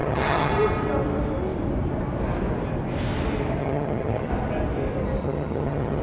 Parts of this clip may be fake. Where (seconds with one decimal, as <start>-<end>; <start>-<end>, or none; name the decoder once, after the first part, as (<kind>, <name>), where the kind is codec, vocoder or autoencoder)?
0.0-0.5 (vocoder, HiFi-GAN); 3.6-4.3; 5.2-6.0

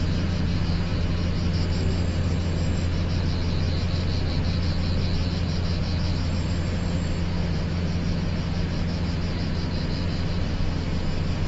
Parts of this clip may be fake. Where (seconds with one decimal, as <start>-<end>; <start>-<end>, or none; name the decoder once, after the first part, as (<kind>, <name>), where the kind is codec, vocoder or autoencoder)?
none

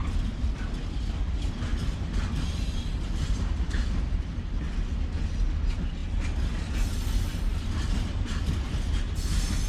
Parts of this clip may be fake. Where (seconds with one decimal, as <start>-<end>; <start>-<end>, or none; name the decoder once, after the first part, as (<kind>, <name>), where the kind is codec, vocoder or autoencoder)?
0.0-0.6 (vocoder, BigVGAN v2); 1.7-3.7; 7.5-8.7

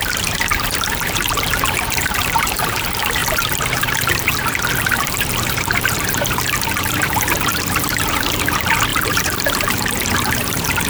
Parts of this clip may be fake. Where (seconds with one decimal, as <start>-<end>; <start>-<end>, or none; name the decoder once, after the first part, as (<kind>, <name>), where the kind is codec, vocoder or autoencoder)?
0.0-4.3 (vocoder, BigVGAN v2); 4.8-10.9

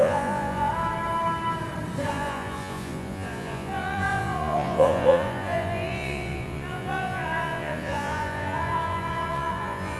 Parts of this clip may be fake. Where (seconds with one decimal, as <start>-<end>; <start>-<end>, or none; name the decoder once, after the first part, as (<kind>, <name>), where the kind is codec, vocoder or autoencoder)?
0.0-0.7 (vocoder, Vocos); 2.1-10.0

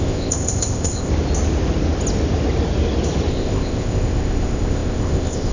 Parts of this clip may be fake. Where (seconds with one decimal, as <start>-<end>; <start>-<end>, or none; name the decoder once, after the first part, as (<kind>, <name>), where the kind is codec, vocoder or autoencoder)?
0.0-1.1 (codec, ZipCodec); 3.3-5.5

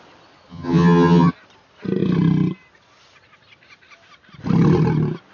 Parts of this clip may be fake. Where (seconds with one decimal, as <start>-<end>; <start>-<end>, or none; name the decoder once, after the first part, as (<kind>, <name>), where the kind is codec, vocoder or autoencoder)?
0.5-1.3 (vocoder, HiFi-GAN)

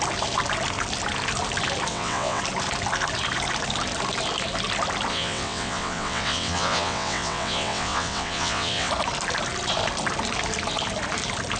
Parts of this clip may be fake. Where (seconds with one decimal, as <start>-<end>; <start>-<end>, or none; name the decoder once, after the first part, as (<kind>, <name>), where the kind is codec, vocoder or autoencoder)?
1.9-2.4 (vocoder, WaveNeXt); 5.1-8.9